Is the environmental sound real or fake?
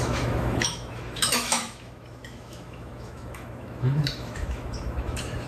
fake